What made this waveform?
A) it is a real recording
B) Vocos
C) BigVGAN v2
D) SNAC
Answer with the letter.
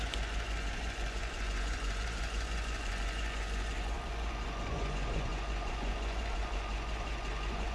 B